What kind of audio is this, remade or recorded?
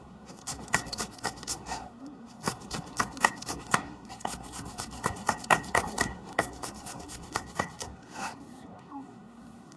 remade